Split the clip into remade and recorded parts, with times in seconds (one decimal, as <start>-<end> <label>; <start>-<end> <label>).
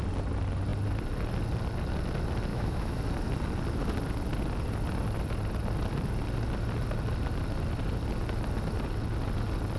0.0-2.5 recorded; 2.5-3.0 remade; 3.0-9.8 recorded